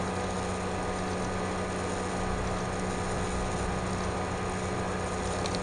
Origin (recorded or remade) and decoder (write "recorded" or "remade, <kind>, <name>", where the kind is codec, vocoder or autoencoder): recorded